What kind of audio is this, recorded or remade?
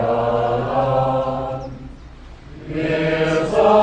recorded